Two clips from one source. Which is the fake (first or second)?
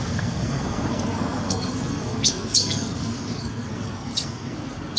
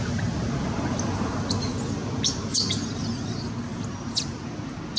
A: first